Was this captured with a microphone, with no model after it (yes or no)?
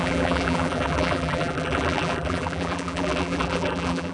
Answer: no